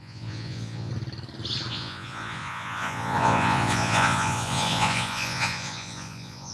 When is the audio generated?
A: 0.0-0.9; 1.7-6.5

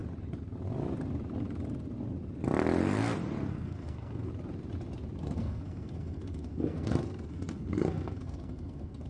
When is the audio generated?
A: 3.5-4.3; 5.2-9.1